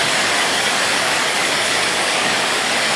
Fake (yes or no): yes